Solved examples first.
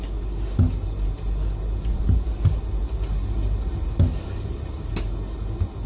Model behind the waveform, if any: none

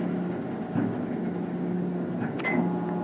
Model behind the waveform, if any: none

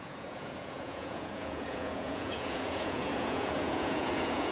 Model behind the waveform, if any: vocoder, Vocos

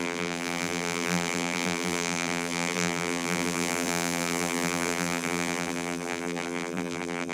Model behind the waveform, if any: vocoder, BigVGAN v2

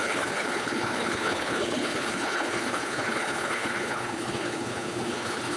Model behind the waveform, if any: codec, HILCodec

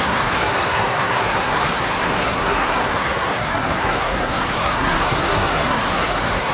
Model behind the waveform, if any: codec, SNAC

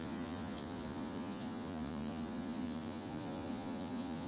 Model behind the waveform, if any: vocoder, Vocos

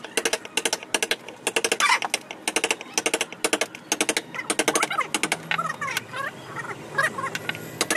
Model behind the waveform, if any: none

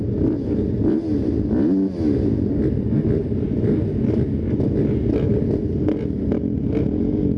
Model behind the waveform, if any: none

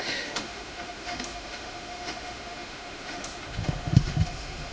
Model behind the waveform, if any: autoencoder, DAC-VAE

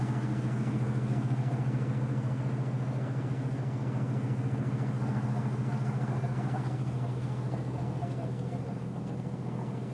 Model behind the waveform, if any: codec, SNAC